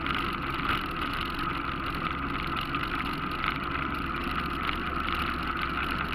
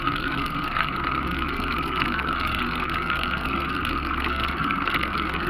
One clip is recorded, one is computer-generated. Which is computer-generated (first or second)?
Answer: second